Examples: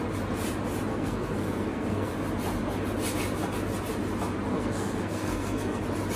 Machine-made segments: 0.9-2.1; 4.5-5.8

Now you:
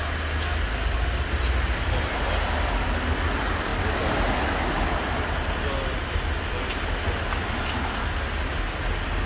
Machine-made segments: none

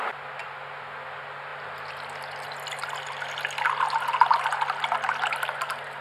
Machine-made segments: none

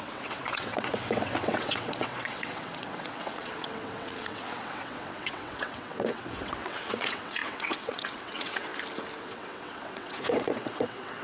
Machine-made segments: 0.0-8.7; 9.2-11.2

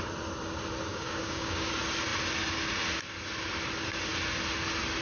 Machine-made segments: 0.9-1.7